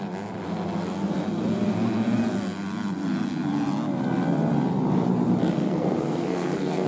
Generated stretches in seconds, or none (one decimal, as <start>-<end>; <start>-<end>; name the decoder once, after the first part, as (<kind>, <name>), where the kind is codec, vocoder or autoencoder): 5.5-6.9 (codec, SNAC)